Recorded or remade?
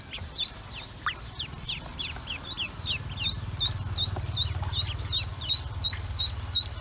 remade